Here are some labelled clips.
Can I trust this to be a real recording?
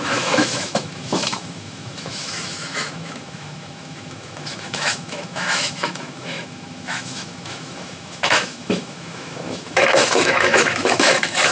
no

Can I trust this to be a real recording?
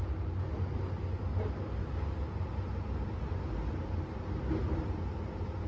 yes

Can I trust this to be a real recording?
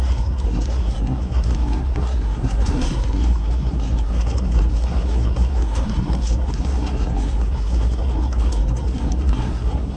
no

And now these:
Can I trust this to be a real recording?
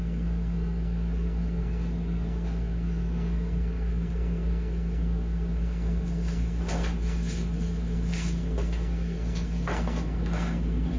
no